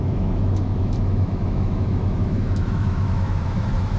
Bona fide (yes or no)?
no